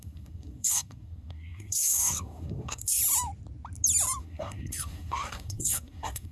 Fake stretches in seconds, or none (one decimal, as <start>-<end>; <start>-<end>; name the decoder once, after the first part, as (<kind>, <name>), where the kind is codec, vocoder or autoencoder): 0.0-3.0 (codec, SNAC); 4.2-6.3

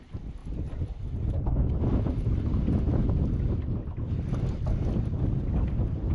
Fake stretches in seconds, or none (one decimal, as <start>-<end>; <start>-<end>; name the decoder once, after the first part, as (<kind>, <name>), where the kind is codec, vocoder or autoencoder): none

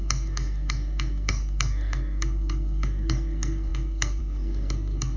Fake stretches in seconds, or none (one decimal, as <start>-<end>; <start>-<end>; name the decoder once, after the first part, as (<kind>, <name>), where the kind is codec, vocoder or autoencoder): 0.0-5.2 (codec, SNAC)

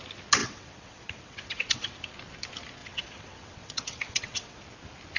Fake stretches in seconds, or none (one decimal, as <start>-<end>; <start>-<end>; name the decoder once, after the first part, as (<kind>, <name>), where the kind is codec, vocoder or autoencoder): 0.4-2.0 (vocoder, WaveNeXt); 2.8-4.6

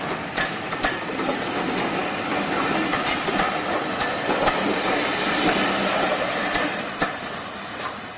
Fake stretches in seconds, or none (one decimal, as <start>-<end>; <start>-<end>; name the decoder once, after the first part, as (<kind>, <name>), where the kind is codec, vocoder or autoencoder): none